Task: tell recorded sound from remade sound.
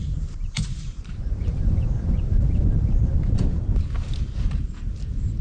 remade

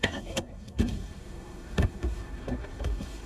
remade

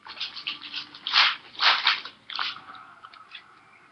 recorded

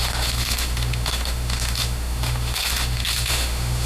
remade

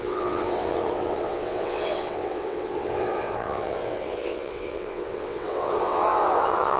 remade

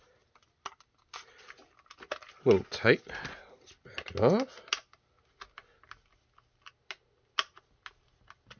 recorded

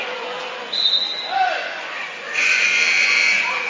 remade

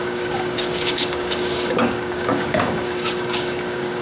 remade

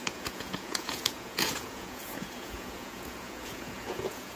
remade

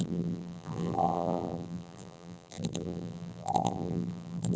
remade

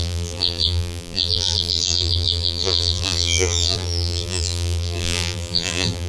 remade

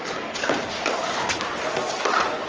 recorded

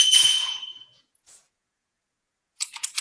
remade